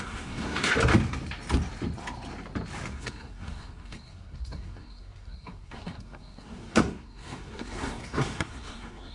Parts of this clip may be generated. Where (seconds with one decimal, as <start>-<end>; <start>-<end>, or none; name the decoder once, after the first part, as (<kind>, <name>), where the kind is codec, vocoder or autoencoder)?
0.0-0.7 (codec, SNAC); 2.9-9.1